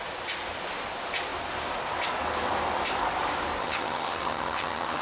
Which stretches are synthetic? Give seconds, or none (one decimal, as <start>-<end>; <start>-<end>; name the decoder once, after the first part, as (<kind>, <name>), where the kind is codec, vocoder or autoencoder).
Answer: 3.6-5.0 (vocoder, HiFi-GAN)